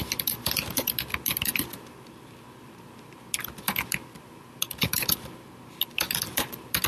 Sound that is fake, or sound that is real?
real